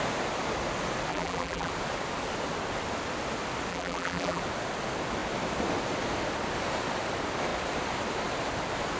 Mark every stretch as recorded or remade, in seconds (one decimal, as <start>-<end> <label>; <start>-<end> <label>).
0.0-1.1 recorded; 1.1-1.7 remade; 1.7-3.7 recorded; 3.7-4.4 remade; 4.4-9.0 recorded